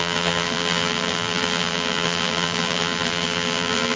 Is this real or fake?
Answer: fake